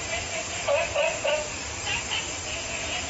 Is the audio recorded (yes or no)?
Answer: no